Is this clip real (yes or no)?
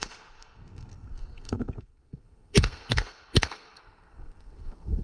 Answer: no